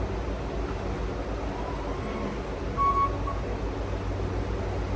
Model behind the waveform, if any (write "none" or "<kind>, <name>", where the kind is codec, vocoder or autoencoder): none